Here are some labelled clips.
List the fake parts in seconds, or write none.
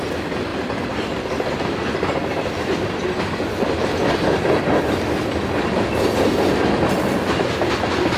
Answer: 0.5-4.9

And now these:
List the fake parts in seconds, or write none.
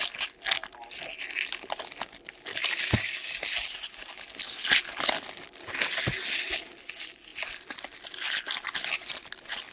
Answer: 2.5-3.4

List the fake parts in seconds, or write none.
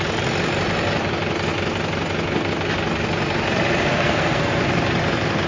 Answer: 3.9-4.6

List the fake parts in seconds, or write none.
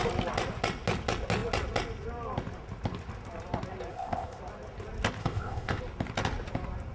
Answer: 3.9-4.4; 5.2-5.8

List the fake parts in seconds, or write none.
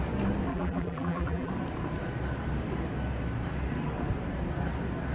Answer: 0.5-1.5